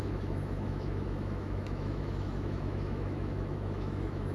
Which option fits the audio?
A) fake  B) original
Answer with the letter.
A